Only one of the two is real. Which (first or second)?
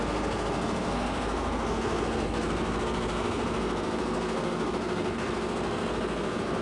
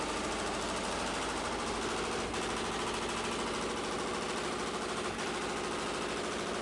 second